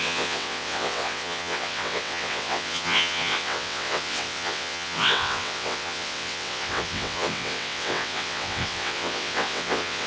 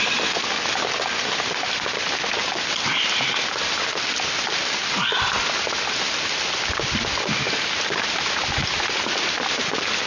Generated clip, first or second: first